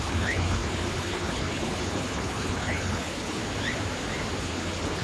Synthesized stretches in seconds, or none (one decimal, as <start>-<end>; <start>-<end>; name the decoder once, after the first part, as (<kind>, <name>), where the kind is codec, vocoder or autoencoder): 0.0-3.4 (codec, HILCodec); 4.4-5.0

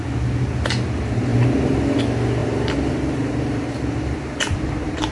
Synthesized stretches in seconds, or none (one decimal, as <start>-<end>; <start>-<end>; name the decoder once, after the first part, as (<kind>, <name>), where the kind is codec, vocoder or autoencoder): 2.4-4.4 (vocoder, BigVGAN v2)

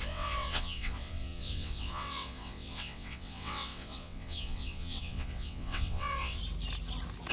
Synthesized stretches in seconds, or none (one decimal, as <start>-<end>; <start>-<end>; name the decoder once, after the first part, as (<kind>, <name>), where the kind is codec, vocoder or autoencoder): 0.0-6.4 (vocoder, WaveNeXt)

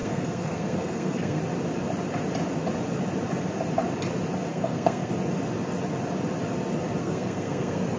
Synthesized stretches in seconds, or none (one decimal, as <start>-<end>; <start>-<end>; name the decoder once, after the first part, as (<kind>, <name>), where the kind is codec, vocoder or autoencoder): 0.0-1.4 (codec, SNAC); 4.5-5.1; 7.0-8.0

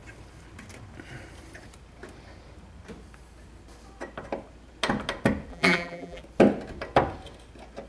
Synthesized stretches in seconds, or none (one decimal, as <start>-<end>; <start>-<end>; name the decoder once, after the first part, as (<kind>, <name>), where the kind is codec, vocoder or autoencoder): 5.5-6.2 (vocoder, BigVGAN v2)

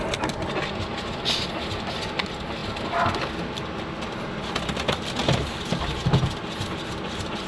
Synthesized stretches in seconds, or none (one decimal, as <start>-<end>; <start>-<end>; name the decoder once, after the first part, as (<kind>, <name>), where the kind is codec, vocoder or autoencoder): none

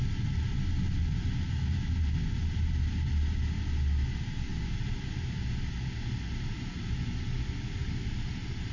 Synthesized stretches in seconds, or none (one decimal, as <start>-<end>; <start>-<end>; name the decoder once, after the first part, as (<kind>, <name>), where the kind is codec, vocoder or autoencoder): none

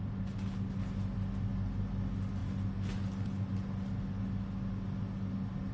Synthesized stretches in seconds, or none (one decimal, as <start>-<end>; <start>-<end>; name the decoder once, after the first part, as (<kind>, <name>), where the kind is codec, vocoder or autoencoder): none